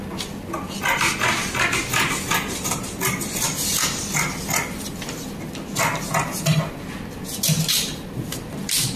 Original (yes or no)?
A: yes